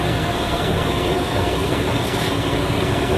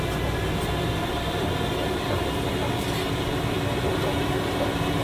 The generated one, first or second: first